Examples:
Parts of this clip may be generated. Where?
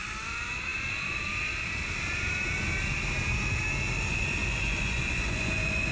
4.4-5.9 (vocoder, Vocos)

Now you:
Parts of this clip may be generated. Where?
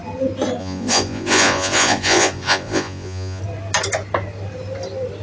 0.6-3.4 (vocoder, Vocos)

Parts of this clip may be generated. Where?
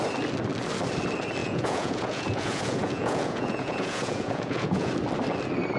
1.4-4.9 (vocoder, Vocos)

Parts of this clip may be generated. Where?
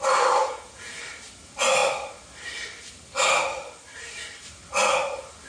0.4-1.0 (vocoder, Vocos)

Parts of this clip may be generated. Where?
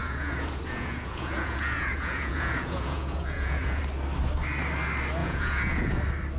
0.0-3.8 (vocoder, Vocos); 5.2-6.0